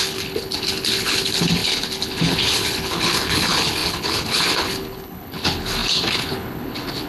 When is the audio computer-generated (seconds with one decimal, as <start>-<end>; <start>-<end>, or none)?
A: 0.0-7.1